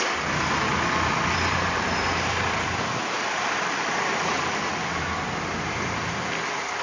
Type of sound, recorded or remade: recorded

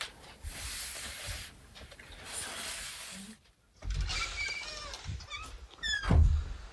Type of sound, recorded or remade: recorded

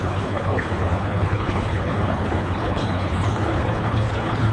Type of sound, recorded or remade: remade